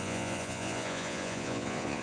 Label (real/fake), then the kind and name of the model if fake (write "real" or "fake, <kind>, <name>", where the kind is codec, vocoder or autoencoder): fake, vocoder, Vocos